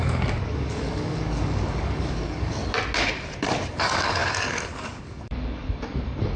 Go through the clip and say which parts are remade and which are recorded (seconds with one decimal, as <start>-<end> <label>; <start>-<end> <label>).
0.0-2.6 remade; 2.6-3.7 recorded; 3.7-6.4 remade